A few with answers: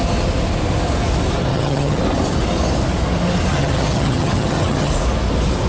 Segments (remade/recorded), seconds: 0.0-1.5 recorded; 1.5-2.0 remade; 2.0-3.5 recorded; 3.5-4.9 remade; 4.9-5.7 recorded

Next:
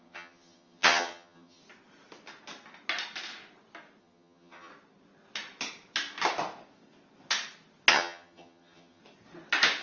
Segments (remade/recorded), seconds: 0.0-1.6 remade; 1.6-4.0 recorded; 4.0-4.7 remade; 4.7-7.9 recorded; 7.9-9.0 remade; 9.0-9.8 recorded

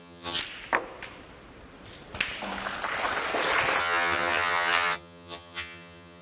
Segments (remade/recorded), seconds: 0.0-0.4 remade; 0.4-3.8 recorded; 3.8-6.2 remade

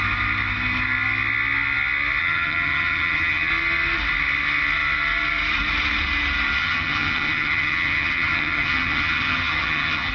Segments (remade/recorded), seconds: 0.0-2.2 recorded; 2.2-3.5 remade; 3.5-6.6 recorded; 6.6-10.1 remade

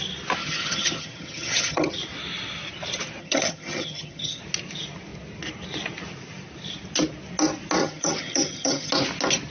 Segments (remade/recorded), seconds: 0.0-0.4 recorded; 0.4-1.9 remade; 1.9-3.2 recorded; 3.2-4.4 remade; 4.4-7.8 recorded; 7.8-8.9 remade; 8.9-9.5 recorded

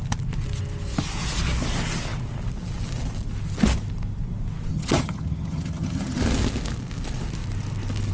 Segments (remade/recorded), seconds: 0.0-4.7 recorded; 4.7-6.2 remade; 6.2-8.1 recorded

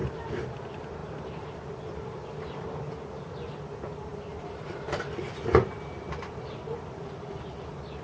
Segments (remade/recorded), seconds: 0.0-8.0 recorded